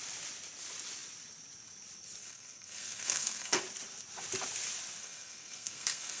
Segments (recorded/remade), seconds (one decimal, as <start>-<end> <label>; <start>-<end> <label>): 0.0-2.2 recorded; 2.2-3.6 remade; 3.6-5.0 recorded; 5.0-6.2 remade